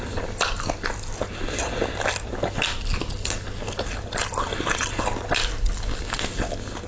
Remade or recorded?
recorded